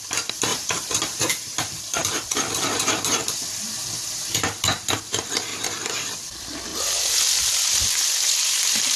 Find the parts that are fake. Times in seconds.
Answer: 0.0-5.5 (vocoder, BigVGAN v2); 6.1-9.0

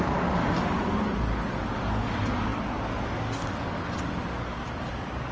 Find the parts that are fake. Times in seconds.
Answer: 0.0-0.4 (codec, DAC); 1.2-5.3

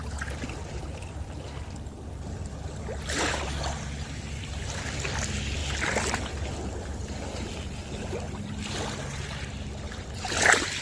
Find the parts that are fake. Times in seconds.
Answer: none

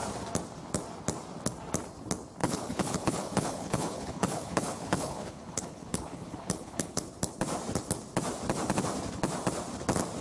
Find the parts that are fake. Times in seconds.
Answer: 2.4-7.1 (codec, HILCodec)

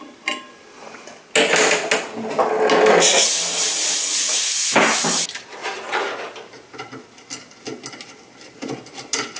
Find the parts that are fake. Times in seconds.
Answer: 5.6-6.1 (vocoder, BigVGAN v2)

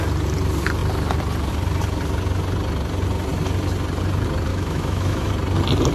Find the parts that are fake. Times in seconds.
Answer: 4.5-5.3 (autoencoder, DAC-VAE)

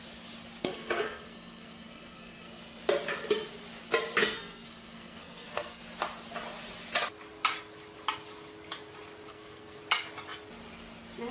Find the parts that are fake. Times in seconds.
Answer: 0.6-2.8 (codec, SNAC); 4.2-5.8; 9.3-9.8

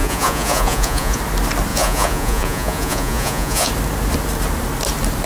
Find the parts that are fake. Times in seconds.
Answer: 0.0-1.2 (vocoder, Vocos); 1.7-3.7